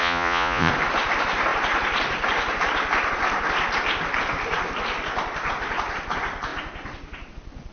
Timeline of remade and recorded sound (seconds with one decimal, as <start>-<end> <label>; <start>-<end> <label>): 0.0-0.7 remade; 0.7-7.7 recorded